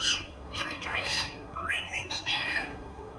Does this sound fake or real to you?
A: fake